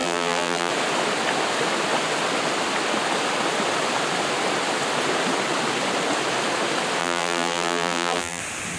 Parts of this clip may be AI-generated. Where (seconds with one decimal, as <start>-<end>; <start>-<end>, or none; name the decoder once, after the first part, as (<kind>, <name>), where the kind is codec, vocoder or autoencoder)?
0.0-0.7 (vocoder, BigVGAN v2); 7.0-8.4